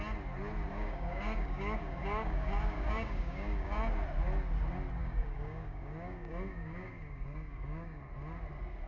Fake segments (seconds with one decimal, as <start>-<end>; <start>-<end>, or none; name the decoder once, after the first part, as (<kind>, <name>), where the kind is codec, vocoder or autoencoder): 0.7-3.8 (codec, DAC); 5.0-8.0